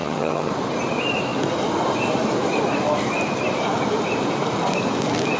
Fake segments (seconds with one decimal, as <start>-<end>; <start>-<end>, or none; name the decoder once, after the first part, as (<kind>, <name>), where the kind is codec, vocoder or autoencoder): 0.0-0.5 (vocoder, HiFi-GAN)